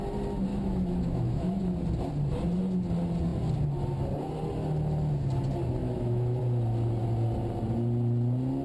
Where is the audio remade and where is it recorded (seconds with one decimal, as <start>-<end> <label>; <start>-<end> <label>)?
0.0-0.5 recorded; 0.5-1.6 remade; 1.6-5.8 recorded; 5.8-6.4 remade; 6.4-8.6 recorded